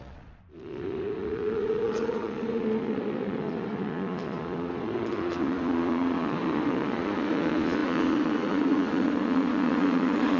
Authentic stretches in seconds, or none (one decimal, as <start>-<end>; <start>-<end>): none